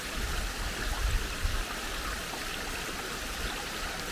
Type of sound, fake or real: real